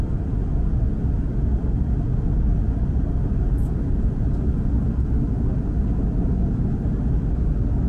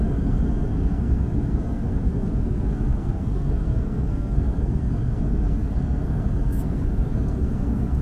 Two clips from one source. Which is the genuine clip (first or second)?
first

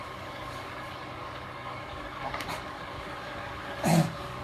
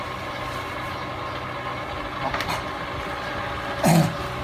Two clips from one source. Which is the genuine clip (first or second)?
second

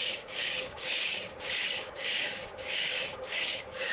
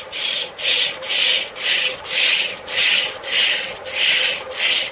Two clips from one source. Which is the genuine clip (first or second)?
second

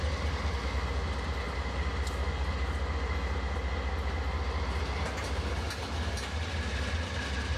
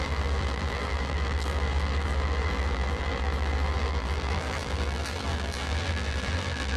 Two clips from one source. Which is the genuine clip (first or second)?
first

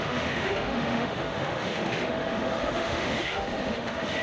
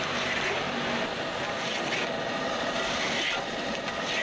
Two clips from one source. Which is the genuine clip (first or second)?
second